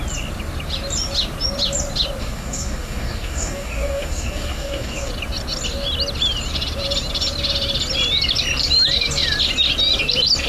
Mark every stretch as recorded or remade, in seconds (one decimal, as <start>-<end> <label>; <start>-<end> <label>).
0.0-2.2 recorded; 2.2-5.1 remade; 5.1-10.5 recorded